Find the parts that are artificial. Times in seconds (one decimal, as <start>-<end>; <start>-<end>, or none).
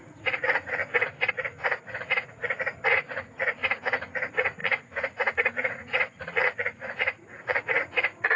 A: 0.0-0.8; 1.3-8.4